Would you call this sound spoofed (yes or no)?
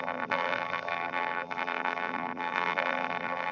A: yes